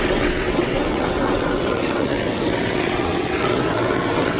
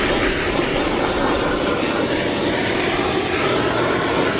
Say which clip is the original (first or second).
second